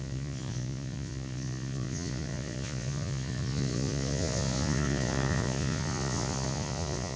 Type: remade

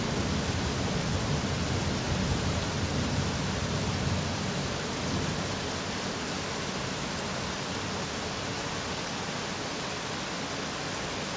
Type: recorded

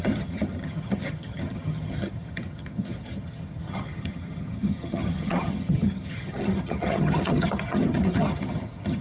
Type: remade